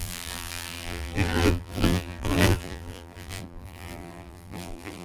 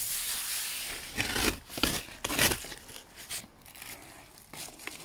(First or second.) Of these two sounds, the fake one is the first